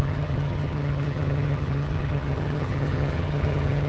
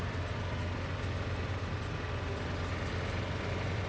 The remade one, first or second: first